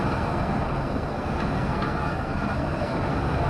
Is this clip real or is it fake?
fake